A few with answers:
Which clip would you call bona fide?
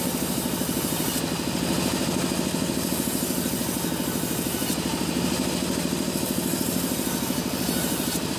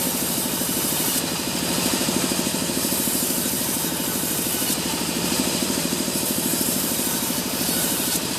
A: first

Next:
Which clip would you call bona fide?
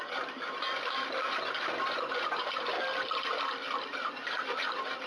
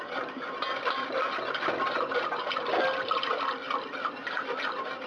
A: second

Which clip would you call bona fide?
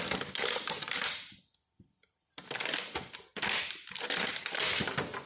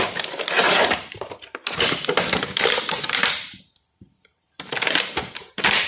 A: first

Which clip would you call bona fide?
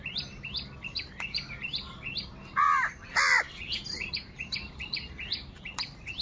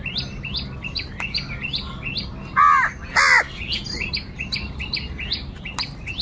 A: second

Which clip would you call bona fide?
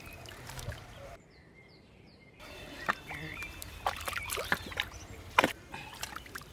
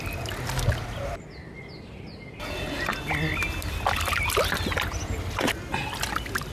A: second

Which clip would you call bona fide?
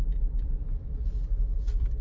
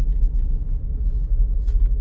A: second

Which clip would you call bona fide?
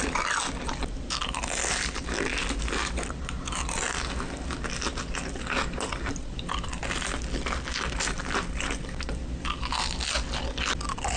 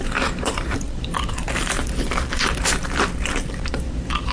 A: first